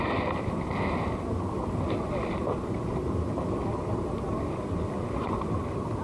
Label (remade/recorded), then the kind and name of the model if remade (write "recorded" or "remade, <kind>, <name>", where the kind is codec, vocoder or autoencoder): recorded